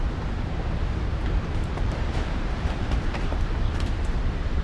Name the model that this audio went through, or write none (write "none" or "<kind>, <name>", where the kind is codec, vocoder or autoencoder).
vocoder, BigVGAN v2